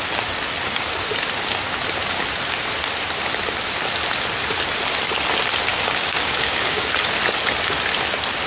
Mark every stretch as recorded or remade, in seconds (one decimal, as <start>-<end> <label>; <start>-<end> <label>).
0.0-5.7 recorded; 5.7-6.9 remade; 6.9-8.5 recorded